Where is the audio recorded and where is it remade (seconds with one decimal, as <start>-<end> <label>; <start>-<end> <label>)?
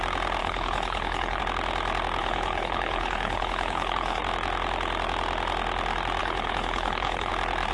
0.0-0.4 recorded; 0.4-1.4 remade; 1.4-2.2 recorded; 2.2-4.2 remade; 4.2-6.2 recorded; 6.2-7.3 remade; 7.3-7.7 recorded